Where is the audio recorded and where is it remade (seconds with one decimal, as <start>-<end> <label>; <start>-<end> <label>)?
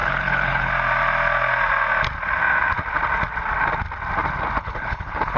0.0-0.7 remade; 0.7-4.6 recorded; 4.6-5.4 remade